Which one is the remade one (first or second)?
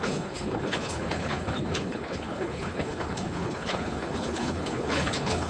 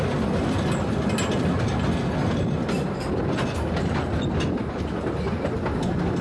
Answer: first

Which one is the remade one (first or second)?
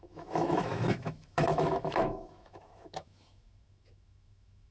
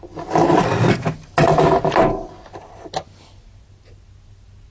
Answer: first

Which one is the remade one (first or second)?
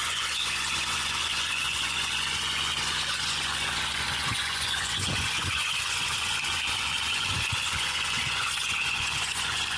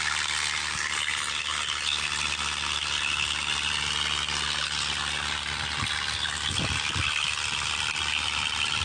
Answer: first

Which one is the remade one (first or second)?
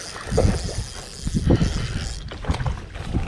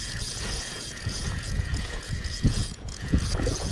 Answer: second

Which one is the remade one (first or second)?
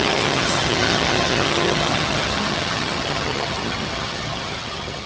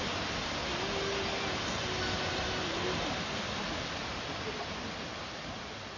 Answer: first